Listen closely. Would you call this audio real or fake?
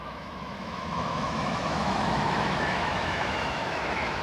fake